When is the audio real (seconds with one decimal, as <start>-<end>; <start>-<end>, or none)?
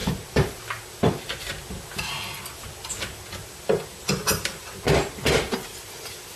0.0-6.4